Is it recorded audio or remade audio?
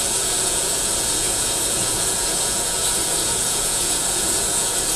remade